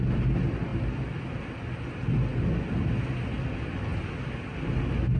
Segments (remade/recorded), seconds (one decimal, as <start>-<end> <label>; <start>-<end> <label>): 0.0-0.7 recorded; 0.7-1.6 remade; 1.6-5.2 recorded